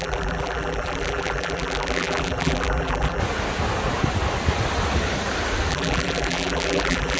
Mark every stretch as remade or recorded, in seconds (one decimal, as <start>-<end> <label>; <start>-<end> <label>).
0.0-3.2 remade; 3.2-5.7 recorded; 5.7-7.2 remade